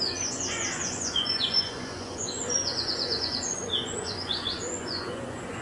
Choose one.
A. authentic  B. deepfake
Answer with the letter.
B